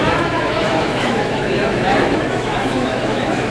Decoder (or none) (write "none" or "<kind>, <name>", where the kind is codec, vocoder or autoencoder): autoencoder, DAC-VAE